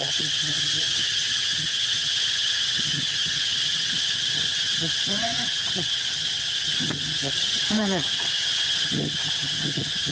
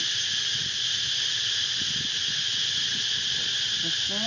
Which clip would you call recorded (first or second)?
second